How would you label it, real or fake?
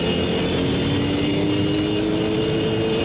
real